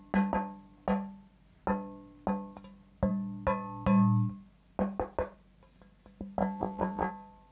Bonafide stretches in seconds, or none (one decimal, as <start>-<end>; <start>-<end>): 0.0-6.4; 7.1-7.5